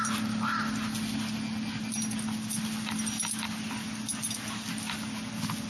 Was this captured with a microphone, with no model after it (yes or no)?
yes